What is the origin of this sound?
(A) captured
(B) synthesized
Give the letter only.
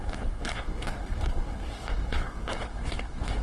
B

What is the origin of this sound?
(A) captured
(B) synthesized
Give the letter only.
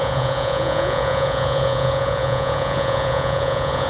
B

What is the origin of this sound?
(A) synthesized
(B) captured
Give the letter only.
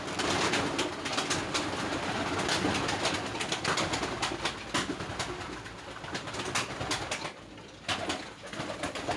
B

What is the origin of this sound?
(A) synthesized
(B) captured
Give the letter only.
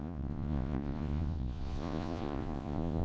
A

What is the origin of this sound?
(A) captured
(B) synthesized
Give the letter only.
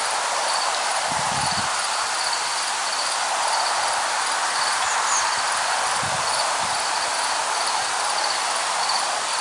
A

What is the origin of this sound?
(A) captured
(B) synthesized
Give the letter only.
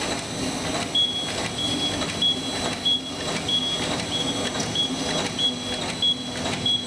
A